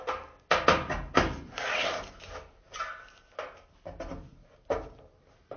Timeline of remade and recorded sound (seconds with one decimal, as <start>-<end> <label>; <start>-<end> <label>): 0.0-5.6 recorded